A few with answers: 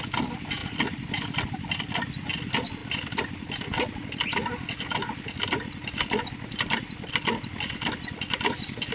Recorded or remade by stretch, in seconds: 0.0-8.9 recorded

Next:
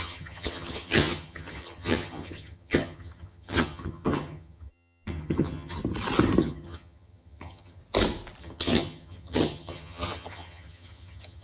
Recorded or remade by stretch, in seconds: 0.0-5.8 remade; 5.8-6.4 recorded; 6.4-7.8 remade; 7.8-8.4 recorded; 8.4-11.4 remade

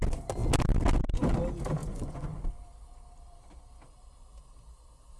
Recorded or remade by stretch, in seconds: 0.0-1.8 recorded; 1.8-2.4 remade; 2.4-5.2 recorded

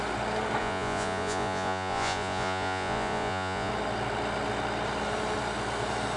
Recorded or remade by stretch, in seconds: 0.0-0.6 recorded; 0.6-3.7 remade; 3.7-6.2 recorded